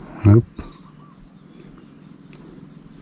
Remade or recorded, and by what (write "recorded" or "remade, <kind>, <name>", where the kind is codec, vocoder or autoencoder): recorded